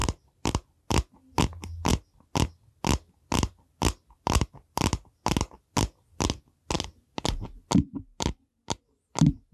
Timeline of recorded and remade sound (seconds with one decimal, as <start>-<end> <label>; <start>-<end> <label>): 0.0-0.5 remade; 0.5-9.5 recorded